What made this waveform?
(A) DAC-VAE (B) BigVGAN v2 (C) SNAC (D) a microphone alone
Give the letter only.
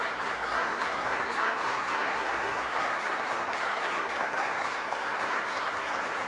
C